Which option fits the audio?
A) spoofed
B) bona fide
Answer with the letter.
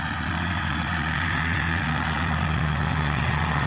A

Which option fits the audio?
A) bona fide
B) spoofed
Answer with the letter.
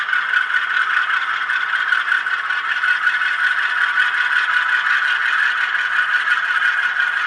A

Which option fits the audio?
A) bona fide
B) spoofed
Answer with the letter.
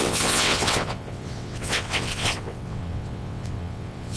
B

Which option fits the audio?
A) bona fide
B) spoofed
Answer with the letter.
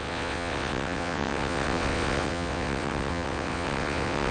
B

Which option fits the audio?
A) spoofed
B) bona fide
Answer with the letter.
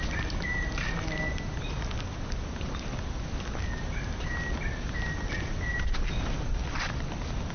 B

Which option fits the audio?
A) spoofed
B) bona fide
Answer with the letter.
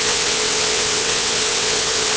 A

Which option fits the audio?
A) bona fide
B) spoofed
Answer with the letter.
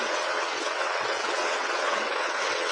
B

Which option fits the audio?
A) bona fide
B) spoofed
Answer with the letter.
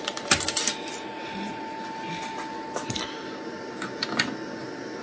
A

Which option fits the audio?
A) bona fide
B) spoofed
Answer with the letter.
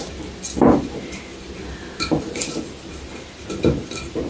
A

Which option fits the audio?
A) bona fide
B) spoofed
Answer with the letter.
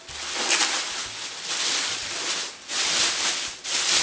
A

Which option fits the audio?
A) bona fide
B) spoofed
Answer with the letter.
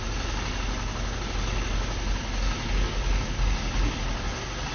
A